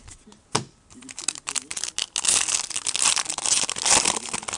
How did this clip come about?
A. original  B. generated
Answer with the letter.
A